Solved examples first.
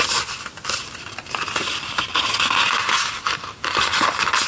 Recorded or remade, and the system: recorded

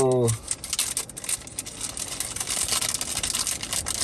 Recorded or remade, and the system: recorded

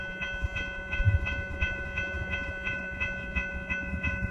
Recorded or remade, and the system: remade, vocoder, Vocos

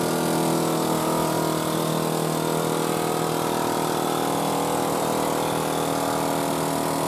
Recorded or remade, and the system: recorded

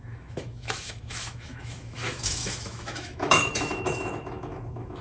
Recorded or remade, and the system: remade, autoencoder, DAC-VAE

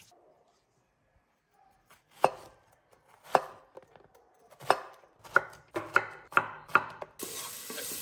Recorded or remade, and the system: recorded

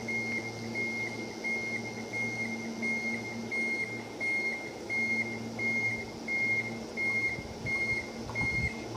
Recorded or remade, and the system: recorded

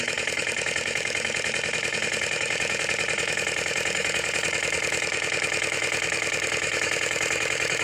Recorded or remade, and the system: remade, autoencoder, DAC-VAE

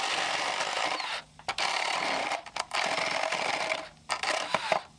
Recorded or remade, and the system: recorded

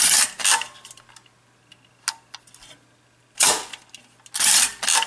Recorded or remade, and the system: recorded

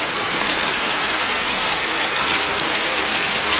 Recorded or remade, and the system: remade, codec, SNAC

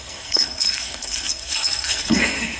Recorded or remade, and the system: remade, codec, SNAC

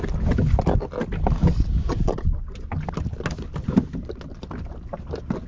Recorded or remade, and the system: recorded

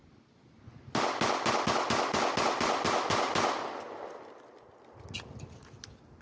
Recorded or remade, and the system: recorded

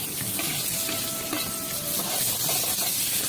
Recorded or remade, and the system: recorded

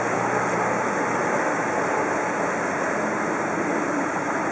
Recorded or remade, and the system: recorded